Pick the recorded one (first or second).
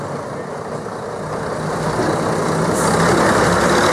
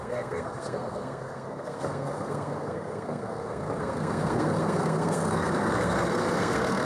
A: first